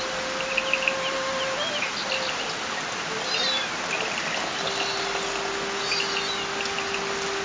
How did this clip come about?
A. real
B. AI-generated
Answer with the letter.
A